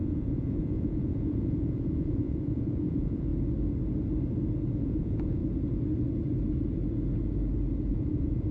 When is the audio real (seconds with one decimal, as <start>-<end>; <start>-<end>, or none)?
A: 3.3-4.7; 5.4-7.9